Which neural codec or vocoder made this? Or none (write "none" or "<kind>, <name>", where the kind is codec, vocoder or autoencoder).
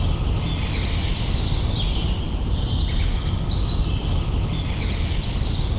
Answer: none